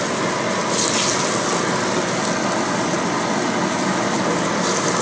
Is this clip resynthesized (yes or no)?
no